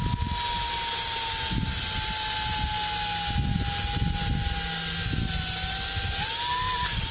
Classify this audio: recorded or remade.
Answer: recorded